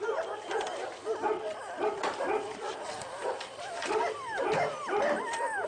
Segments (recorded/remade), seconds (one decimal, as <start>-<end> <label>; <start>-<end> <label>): 0.0-5.7 recorded